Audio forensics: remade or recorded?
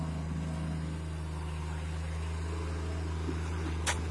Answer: recorded